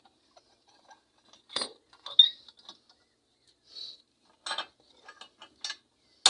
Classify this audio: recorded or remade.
recorded